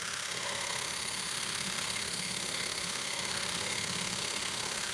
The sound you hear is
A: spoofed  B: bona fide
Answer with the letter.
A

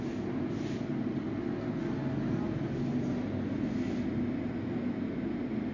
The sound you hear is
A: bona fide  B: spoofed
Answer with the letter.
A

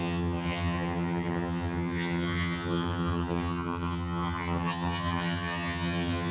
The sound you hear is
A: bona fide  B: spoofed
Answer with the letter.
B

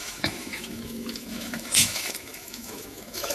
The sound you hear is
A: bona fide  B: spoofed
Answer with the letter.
B